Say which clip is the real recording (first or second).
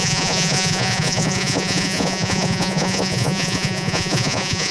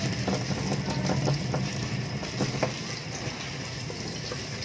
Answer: second